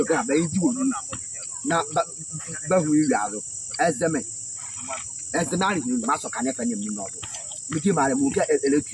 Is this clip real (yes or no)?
yes